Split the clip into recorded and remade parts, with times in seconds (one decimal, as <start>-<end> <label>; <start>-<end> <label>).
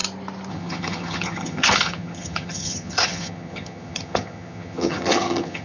0.0-0.5 recorded; 0.5-5.6 remade